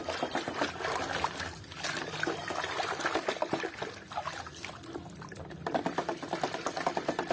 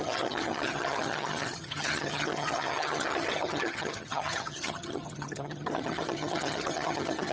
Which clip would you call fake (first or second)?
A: second